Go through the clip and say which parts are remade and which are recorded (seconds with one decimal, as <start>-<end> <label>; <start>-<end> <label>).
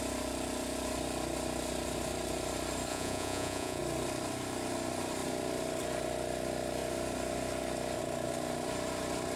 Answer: 0.0-2.9 recorded; 2.9-3.8 remade; 3.8-9.4 recorded